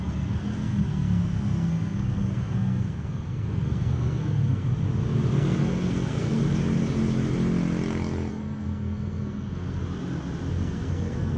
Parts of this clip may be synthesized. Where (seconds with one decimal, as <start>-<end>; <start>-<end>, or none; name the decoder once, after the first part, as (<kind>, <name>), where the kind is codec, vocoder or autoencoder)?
0.0-4.7 (codec, SNAC); 5.3-6.4; 8.3-9.8; 10.5-11.4